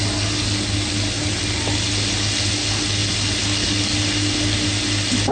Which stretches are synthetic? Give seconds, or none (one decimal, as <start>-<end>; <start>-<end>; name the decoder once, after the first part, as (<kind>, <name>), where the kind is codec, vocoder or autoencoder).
none